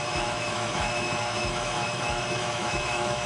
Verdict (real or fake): fake